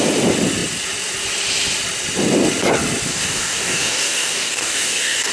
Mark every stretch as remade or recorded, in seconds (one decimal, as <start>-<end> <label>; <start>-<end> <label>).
0.0-3.1 recorded; 3.1-5.3 remade